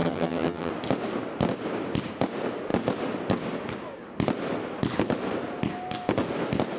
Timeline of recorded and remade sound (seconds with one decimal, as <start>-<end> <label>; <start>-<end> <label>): 0.0-0.7 remade; 0.7-6.8 recorded